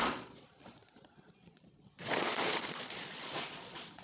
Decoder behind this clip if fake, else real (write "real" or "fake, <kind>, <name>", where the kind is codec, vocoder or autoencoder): fake, vocoder, Vocos